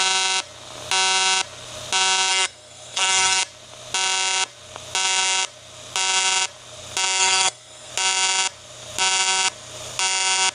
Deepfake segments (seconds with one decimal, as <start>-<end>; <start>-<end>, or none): 2.3-3.4; 7.2-7.9